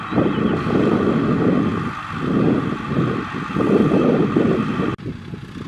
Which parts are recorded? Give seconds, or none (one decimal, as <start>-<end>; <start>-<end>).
0.0-5.7